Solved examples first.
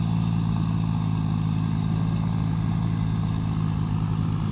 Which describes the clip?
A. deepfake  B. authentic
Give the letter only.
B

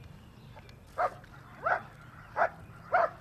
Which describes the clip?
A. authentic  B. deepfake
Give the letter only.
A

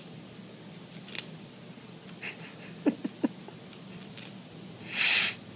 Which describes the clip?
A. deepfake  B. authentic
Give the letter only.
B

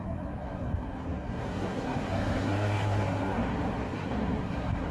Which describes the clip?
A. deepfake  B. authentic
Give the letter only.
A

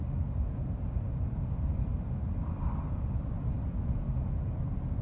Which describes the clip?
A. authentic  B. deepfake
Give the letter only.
A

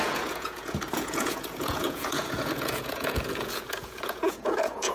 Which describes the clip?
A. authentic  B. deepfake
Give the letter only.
B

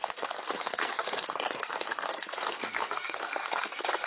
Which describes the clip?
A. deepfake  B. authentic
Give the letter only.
A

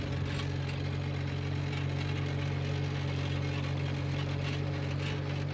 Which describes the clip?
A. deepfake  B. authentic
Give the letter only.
B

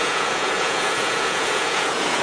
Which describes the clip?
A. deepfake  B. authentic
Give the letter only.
A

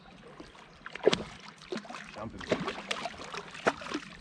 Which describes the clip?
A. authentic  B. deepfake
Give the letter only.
A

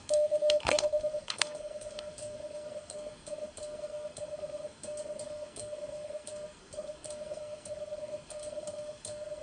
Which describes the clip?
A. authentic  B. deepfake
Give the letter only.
B